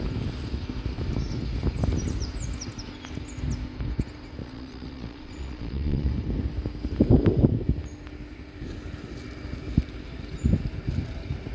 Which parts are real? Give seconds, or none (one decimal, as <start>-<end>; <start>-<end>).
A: 0.0-4.4; 6.1-11.5